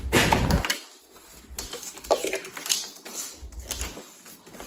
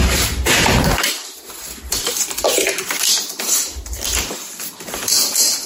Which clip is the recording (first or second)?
first